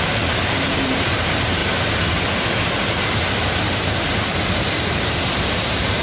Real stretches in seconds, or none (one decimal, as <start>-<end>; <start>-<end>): 1.6-4.8